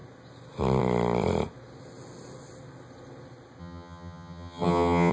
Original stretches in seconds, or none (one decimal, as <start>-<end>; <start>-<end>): 0.0-3.6